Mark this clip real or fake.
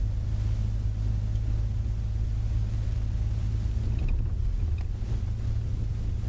real